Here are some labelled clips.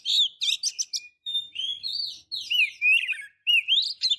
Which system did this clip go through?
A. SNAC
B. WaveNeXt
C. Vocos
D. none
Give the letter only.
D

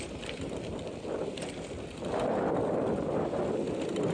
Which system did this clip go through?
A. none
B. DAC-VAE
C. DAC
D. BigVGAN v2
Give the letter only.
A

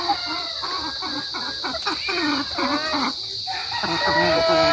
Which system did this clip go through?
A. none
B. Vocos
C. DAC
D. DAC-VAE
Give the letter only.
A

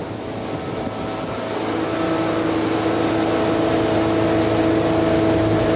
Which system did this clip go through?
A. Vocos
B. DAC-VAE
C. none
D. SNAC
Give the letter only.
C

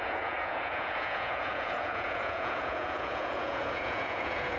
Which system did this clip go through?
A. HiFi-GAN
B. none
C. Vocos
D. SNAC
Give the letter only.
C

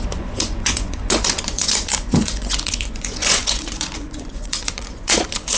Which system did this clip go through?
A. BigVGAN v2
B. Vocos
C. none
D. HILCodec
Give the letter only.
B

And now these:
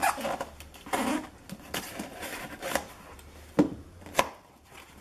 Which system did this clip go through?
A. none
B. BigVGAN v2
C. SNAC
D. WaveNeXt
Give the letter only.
A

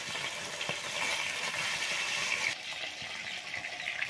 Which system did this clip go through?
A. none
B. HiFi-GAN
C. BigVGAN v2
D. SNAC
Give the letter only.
A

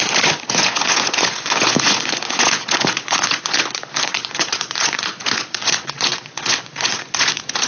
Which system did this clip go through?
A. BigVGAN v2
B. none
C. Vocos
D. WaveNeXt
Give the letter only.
C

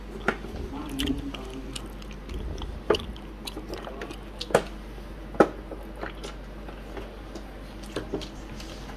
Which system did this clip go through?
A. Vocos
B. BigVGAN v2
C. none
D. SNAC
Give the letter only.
C